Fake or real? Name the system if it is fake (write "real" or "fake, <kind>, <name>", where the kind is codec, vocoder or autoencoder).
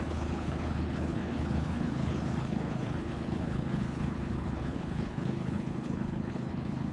fake, codec, HILCodec